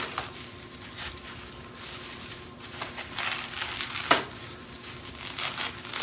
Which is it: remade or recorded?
recorded